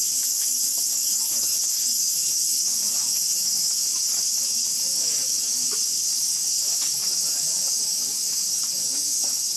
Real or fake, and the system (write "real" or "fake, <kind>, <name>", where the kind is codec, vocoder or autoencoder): fake, codec, DAC